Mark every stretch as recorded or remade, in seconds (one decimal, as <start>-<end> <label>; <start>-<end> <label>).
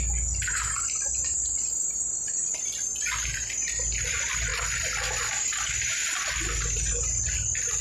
0.0-7.8 recorded